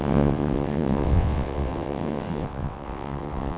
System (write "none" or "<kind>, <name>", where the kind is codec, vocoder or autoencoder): vocoder, WaveNeXt